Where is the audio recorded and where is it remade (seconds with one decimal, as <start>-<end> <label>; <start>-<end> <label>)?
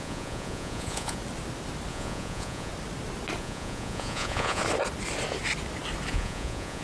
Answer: 0.0-1.2 remade; 1.2-1.9 recorded; 1.9-2.7 remade; 2.7-3.4 recorded; 3.4-4.6 remade; 4.6-6.1 recorded; 6.1-6.8 remade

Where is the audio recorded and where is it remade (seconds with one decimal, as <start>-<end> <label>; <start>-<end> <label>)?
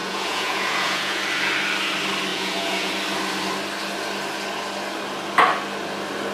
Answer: 0.0-1.2 remade; 1.2-2.3 recorded; 2.3-2.9 remade; 2.9-6.3 recorded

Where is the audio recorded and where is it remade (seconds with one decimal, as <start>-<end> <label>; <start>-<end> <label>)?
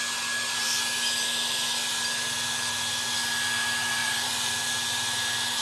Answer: 0.0-4.0 recorded; 4.0-4.5 remade; 4.5-5.6 recorded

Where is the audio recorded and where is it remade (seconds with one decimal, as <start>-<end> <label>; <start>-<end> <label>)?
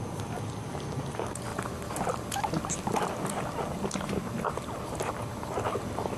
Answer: 0.0-6.2 recorded